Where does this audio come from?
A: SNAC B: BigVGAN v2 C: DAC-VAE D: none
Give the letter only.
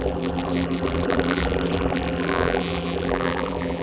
B